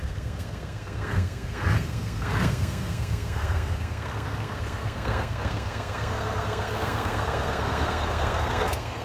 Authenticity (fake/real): fake